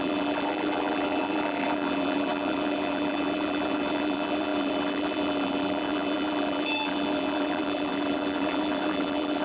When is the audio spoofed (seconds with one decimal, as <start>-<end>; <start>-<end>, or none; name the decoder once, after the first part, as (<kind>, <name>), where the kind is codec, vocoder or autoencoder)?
0.0-9.4 (vocoder, BigVGAN v2)